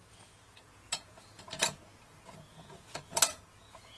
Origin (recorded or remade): remade